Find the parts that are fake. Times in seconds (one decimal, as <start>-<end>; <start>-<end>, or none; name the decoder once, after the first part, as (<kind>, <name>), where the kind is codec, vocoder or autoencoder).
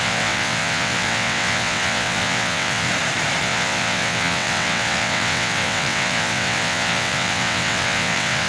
0.0-2.9 (vocoder, WaveNeXt); 3.4-8.5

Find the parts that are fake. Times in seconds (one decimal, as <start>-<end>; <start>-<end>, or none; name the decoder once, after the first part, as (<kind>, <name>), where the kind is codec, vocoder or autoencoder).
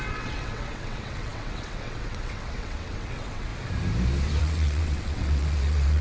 0.0-3.5 (vocoder, WaveNeXt); 4.4-6.0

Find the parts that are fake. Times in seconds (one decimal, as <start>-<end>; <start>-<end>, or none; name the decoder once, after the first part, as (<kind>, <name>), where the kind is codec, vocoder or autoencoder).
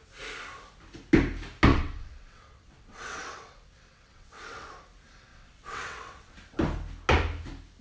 1.7-4.7 (vocoder, WaveNeXt); 5.3-6.3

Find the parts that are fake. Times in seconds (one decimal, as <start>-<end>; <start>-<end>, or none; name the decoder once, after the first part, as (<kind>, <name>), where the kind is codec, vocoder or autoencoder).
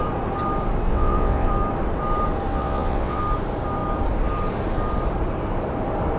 0.9-1.5 (vocoder, WaveNeXt); 2.5-3.2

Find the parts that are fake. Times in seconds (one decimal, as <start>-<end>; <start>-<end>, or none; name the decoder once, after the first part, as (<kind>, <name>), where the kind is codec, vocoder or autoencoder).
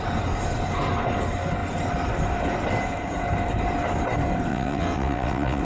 4.5-5.6 (vocoder, WaveNeXt)